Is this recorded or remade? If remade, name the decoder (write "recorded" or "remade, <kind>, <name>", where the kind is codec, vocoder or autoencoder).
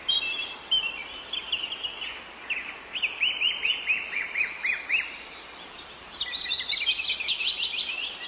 remade, vocoder, BigVGAN v2